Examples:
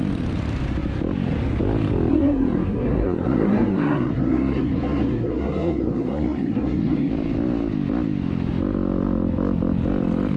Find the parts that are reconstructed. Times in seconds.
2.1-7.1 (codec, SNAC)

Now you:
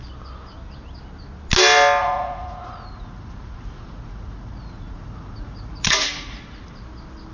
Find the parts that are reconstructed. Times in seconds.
2.0-6.4 (vocoder, Vocos)

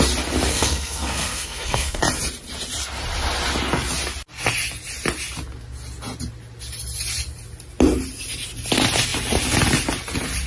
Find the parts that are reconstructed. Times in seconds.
0.5-2.0 (codec, SNAC)

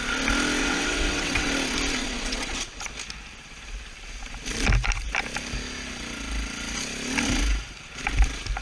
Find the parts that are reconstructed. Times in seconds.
0.6-1.5 (vocoder, WaveNeXt); 2.0-2.8

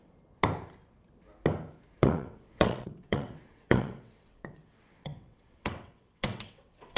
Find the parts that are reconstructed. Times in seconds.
2.0-7.0 (vocoder, WaveNeXt)